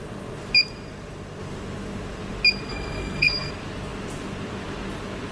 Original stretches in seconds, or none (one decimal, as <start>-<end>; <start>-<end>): 0.0-2.7; 3.5-5.3

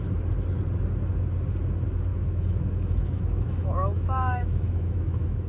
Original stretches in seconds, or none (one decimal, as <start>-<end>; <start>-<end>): 0.0-2.1

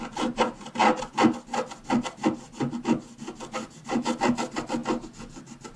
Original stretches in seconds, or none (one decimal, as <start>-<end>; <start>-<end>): 0.0-5.8

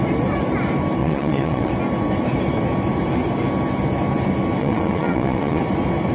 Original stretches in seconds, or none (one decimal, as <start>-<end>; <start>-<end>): 0.0-1.0; 1.7-4.6; 5.6-6.1

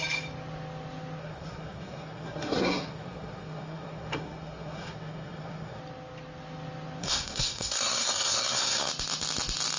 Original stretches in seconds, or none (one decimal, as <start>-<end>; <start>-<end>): 0.0-1.2; 5.8-7.0; 8.9-9.8

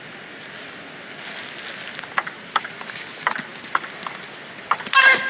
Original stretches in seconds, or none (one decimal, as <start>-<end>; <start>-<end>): 0.0-5.3

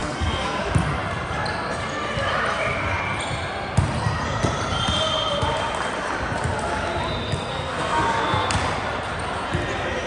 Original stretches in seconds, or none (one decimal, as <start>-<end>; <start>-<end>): 0.6-7.5; 8.5-10.1